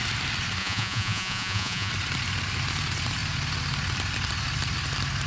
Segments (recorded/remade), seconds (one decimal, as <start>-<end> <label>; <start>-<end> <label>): 0.0-0.6 recorded; 0.6-1.9 remade; 1.9-5.3 recorded